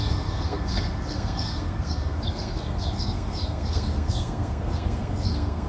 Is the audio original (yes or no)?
no